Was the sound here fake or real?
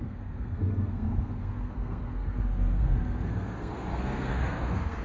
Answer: fake